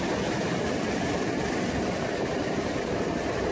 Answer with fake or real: real